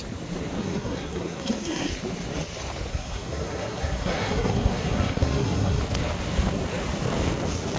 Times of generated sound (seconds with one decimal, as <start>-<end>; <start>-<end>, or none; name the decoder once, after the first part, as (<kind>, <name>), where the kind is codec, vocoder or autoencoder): 0.6-1.9 (codec, SNAC); 2.9-5.8